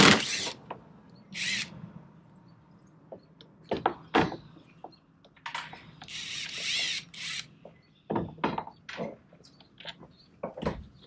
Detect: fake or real real